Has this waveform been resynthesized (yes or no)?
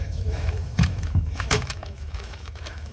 yes